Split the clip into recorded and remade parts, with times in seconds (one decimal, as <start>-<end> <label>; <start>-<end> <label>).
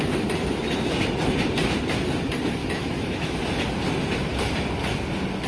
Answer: 0.0-2.6 recorded; 2.6-3.4 remade; 3.4-5.5 recorded